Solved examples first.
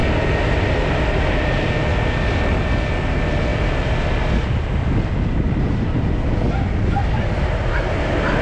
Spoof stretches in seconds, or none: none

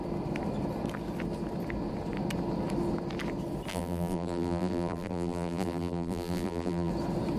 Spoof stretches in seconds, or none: 3.7-6.9 (vocoder, BigVGAN v2)

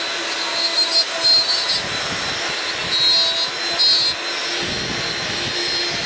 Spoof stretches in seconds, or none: 0.7-2.3 (vocoder, BigVGAN v2)

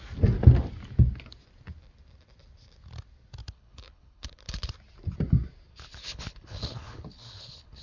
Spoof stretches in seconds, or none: 3.4-4.7 (codec, HILCodec); 5.7-7.8

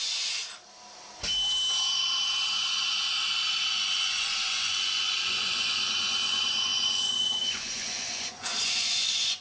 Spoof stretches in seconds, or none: 0.0-0.4 (vocoder, Vocos); 3.7-9.4